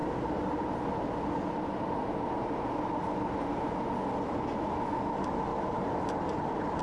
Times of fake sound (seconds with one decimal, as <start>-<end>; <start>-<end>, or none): 5.5-6.8